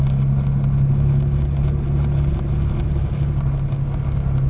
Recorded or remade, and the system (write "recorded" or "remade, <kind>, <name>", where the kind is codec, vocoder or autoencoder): recorded